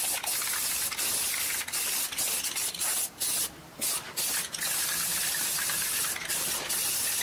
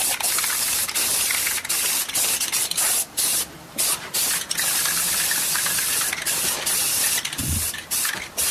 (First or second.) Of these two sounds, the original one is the first